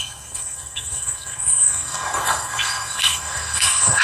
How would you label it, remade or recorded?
remade